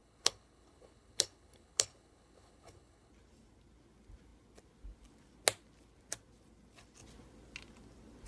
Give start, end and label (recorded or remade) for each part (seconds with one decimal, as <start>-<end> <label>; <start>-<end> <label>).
0.0-3.1 remade; 3.1-8.3 recorded